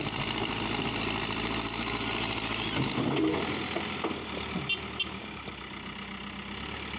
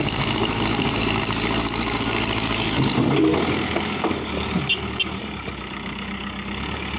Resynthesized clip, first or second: second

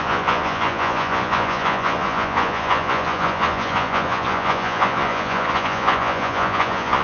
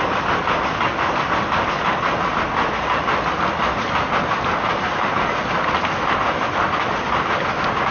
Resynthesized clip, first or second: first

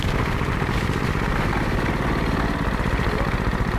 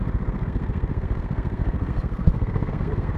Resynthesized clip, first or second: second